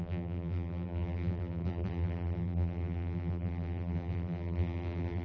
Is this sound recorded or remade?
remade